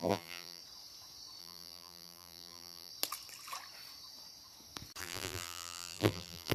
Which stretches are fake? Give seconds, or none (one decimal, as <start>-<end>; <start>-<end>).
0.0-0.6; 1.4-2.9; 5.0-6.5